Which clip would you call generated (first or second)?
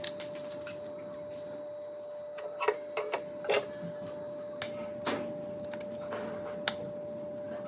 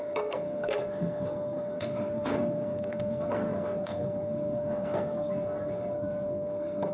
second